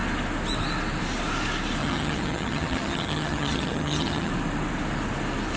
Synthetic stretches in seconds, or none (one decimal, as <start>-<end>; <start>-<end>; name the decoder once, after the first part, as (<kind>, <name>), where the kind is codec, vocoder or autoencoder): 1.8-4.3 (vocoder, HiFi-GAN)